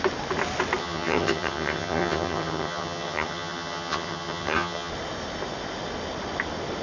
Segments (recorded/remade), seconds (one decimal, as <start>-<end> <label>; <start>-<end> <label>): 0.0-0.8 recorded; 0.8-4.9 remade; 4.9-6.8 recorded